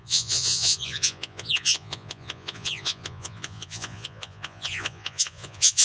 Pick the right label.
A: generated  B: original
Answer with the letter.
A